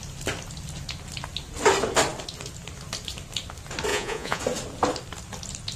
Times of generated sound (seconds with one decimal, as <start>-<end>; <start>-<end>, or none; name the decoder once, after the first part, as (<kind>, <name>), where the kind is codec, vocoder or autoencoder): 3.9-4.4 (vocoder, Vocos)